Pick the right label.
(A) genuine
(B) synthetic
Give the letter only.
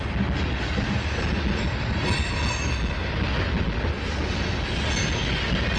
A